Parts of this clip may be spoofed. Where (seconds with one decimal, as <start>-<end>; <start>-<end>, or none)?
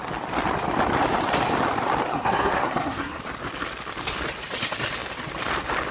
2.1-3.2